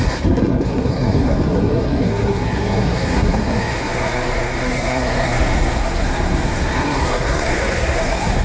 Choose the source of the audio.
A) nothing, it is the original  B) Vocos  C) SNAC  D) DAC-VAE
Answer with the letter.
C